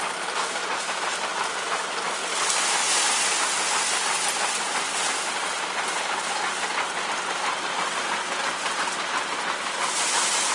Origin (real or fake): real